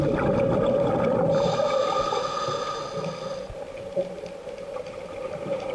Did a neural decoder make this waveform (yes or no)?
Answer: no